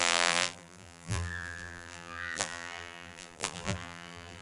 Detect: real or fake fake